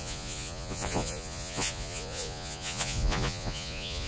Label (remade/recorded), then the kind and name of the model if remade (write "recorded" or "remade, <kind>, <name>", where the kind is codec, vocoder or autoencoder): remade, vocoder, Vocos